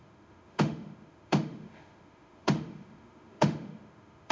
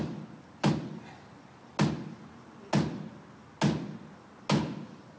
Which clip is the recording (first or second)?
second